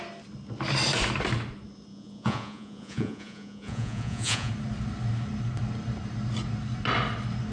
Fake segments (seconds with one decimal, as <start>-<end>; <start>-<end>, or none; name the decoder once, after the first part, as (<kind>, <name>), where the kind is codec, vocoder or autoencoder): 1.9-4.5 (vocoder, Vocos)